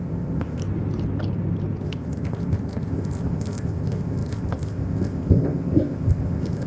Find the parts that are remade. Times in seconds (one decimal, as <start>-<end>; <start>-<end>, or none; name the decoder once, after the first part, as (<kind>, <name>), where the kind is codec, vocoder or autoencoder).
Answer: 0.0-0.6 (codec, ZipCodec); 1.8-6.7